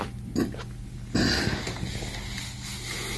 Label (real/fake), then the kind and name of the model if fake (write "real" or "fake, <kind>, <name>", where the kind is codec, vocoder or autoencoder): real